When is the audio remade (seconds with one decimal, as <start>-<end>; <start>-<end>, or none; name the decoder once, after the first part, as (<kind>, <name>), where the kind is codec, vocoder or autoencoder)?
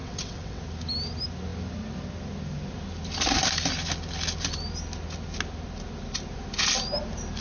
0.0-0.6 (vocoder, WaveNeXt)